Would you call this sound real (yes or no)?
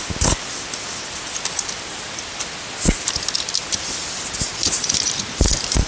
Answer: yes